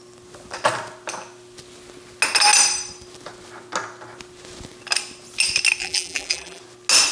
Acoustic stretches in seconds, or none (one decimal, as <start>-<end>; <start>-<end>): 0.0-5.8; 6.6-7.1

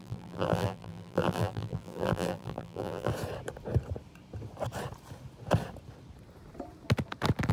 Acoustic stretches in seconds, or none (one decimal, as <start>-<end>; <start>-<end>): 3.1-7.5

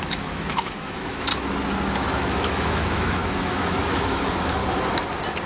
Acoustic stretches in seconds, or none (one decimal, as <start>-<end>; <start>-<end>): 1.3-2.0; 4.6-5.5

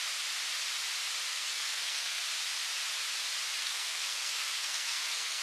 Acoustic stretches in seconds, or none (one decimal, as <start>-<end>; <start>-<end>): 0.0-1.3; 2.2-3.6

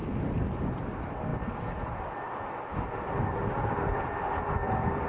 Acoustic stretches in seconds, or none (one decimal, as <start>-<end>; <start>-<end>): none